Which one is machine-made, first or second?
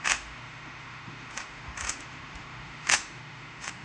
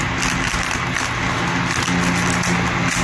first